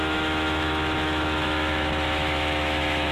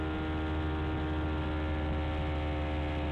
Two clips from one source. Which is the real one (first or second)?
second